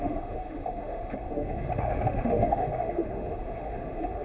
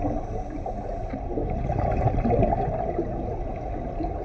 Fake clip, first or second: first